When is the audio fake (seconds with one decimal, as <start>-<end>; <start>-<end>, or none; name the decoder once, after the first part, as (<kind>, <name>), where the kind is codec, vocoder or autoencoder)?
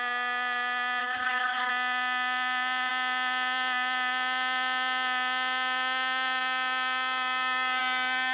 1.0-1.7 (codec, HILCodec)